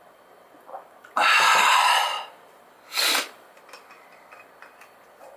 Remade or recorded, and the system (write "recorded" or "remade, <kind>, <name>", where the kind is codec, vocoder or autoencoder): remade, vocoder, BigVGAN v2